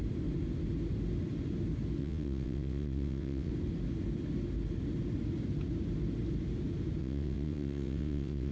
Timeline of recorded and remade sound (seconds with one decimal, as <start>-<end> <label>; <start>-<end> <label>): 0.0-2.0 recorded; 2.0-3.5 remade; 3.5-7.0 recorded; 7.0-8.5 remade